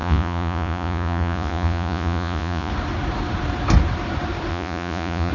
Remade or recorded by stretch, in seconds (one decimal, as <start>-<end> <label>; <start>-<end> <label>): 0.0-2.7 remade; 2.7-4.5 recorded; 4.5-5.3 remade